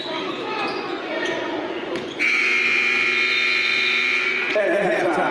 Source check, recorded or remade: remade